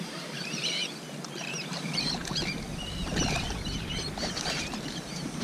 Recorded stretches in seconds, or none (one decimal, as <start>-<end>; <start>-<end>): 0.8-1.5; 2.2-3.5